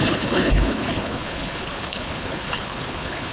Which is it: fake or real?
fake